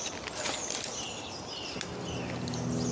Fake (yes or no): no